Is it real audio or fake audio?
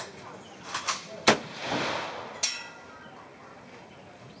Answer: real